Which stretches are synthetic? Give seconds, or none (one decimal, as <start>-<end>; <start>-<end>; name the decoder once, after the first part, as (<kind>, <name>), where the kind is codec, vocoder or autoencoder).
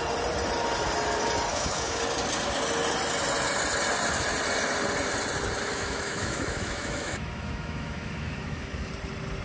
1.5-2.0 (autoencoder, DAC-VAE); 5.7-8.9